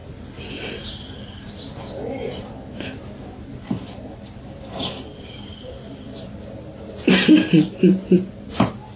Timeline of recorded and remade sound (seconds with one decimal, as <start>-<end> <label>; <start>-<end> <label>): 0.0-2.8 remade; 2.8-3.4 recorded; 3.4-6.2 remade; 6.2-9.0 recorded